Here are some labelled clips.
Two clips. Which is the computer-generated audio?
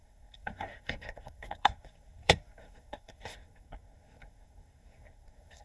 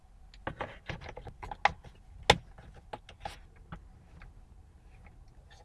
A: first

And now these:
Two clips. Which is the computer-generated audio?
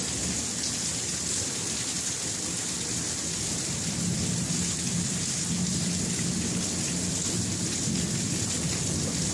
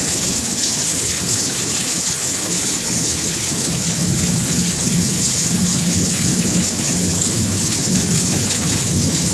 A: second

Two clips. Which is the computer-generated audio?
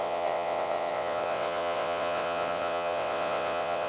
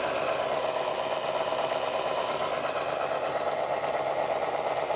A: first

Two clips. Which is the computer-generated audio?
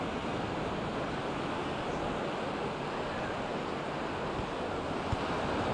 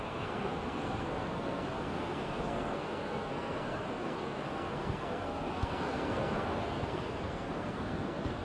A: second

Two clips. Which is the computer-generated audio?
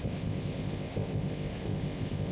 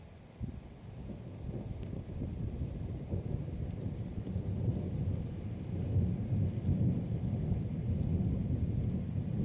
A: first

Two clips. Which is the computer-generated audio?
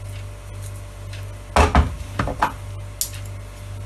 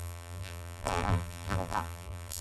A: second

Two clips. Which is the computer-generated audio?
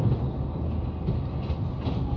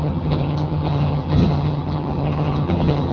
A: second